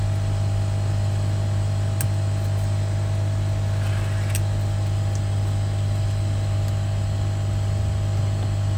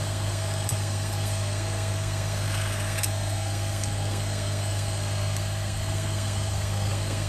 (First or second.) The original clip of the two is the first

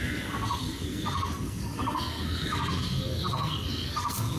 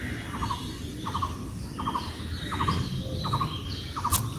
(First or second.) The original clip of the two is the second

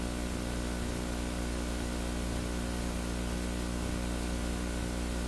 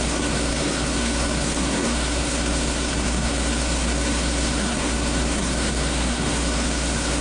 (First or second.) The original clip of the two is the first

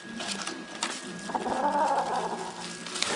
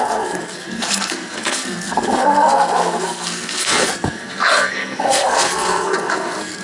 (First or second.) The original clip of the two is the first